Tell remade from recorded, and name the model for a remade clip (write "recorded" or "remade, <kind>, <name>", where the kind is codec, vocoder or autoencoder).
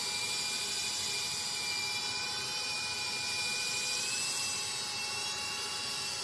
remade, vocoder, BigVGAN v2